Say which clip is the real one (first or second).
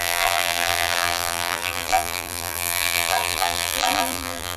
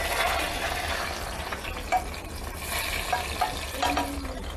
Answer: second